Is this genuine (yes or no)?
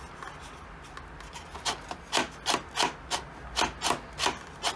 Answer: yes